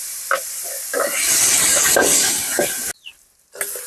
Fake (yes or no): no